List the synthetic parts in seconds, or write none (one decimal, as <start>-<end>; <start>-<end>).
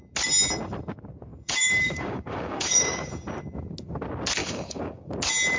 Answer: 1.3-3.1; 4.4-5.1